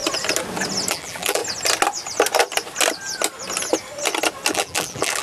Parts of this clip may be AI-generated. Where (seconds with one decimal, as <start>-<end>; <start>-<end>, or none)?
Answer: 0.9-1.4; 4.5-5.2